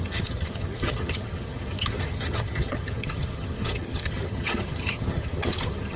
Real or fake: fake